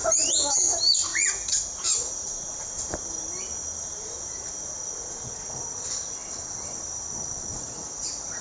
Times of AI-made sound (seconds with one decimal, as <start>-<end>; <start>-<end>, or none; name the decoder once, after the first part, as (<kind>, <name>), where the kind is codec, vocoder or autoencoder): 1.1-2.6 (vocoder, Vocos); 7.5-8.4